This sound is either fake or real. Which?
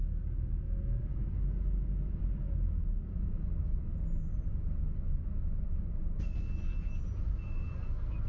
real